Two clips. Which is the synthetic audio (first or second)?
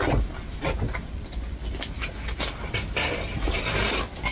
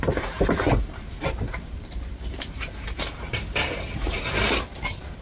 second